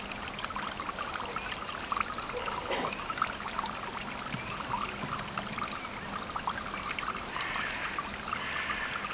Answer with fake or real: real